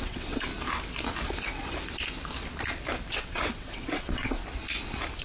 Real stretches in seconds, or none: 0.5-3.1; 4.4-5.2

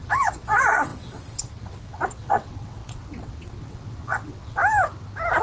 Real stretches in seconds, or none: 4.6-5.4

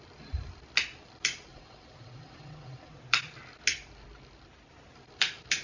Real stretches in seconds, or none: 0.0-1.5; 3.0-5.6

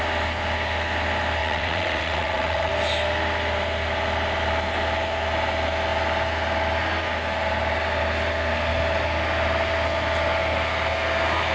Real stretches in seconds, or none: 0.0-1.4; 2.7-11.5

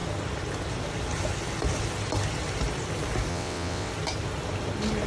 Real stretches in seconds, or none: 0.0-3.3; 3.9-5.1

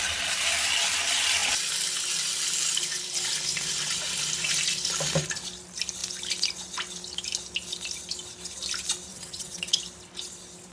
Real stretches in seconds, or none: 0.0-9.1; 9.8-10.7